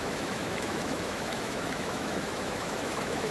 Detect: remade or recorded remade